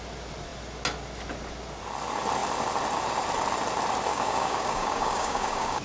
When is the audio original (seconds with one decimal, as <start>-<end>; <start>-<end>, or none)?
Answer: 0.0-4.1